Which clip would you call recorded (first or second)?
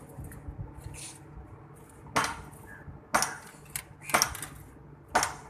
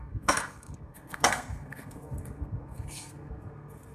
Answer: first